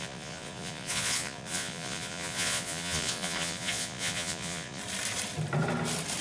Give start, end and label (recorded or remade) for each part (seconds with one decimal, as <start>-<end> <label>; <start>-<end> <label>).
0.0-4.8 remade; 4.8-6.2 recorded